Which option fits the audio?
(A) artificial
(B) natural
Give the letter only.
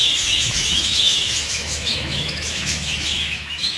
A